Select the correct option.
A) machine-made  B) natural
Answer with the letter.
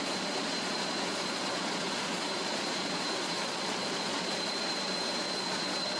A